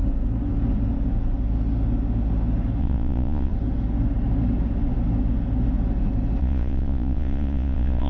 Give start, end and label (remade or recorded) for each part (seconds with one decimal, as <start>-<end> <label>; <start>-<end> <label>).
0.0-2.8 recorded; 2.8-3.5 remade; 3.5-6.4 recorded; 6.4-8.1 remade